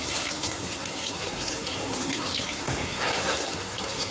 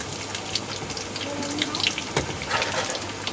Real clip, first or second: second